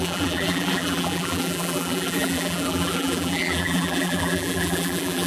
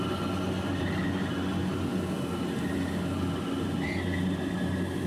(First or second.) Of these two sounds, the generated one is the first